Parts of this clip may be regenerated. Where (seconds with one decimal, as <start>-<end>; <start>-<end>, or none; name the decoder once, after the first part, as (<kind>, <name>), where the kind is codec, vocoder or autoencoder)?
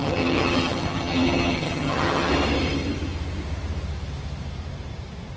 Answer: 0.0-2.3 (vocoder, HiFi-GAN)